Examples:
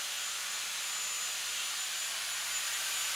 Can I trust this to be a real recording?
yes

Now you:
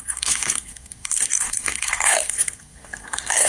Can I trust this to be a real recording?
no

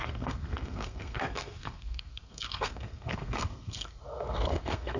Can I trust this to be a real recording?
no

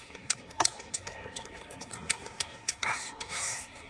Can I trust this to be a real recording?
no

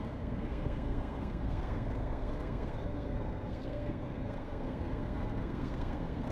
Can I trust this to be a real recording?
no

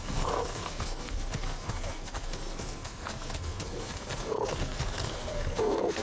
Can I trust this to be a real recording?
no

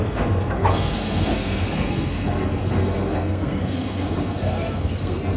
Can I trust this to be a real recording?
no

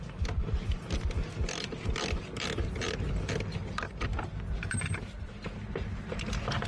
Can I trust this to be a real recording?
yes